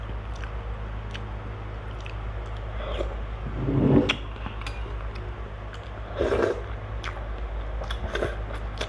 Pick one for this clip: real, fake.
real